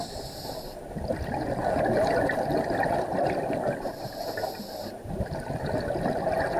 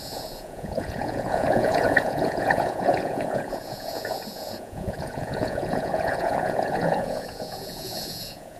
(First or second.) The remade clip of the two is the second